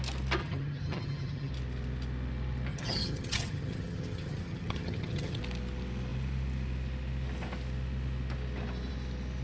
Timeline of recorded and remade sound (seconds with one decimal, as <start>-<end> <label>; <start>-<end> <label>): 0.0-0.4 recorded; 0.4-1.5 remade; 1.5-2.7 recorded; 2.7-5.4 remade; 5.4-9.4 recorded